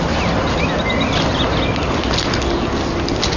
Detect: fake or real real